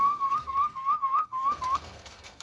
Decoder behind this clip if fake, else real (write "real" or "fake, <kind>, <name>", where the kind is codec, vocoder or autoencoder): fake, codec, SNAC